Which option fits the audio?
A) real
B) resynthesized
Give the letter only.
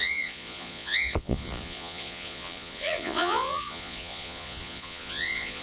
B